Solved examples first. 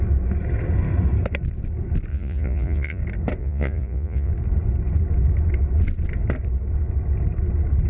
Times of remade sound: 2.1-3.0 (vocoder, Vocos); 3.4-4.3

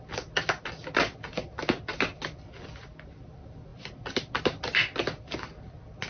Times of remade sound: none